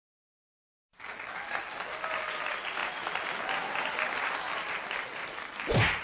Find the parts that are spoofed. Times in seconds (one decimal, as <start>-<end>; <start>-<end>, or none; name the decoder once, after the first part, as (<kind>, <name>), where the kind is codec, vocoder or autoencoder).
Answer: none